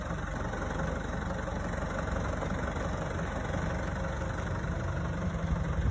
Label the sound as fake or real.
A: real